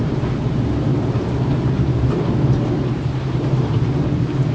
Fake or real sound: fake